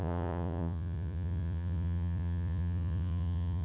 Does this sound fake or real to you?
fake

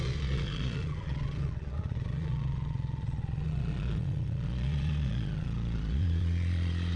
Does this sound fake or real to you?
fake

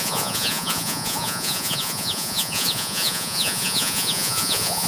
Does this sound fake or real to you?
fake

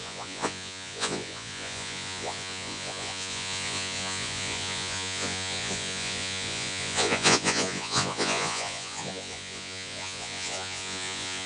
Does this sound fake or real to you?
fake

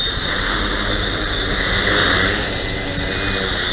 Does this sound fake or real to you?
real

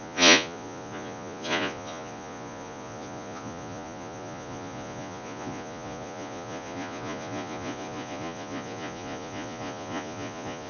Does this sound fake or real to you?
fake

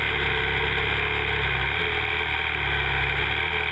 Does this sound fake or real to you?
real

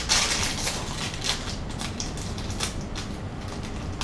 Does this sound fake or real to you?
real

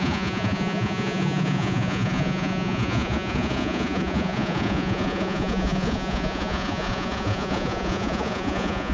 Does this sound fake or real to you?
fake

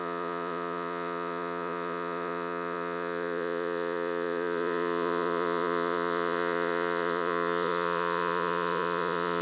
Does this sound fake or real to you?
fake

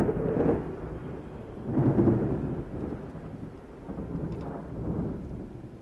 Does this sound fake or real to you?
real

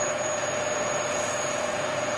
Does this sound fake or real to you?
fake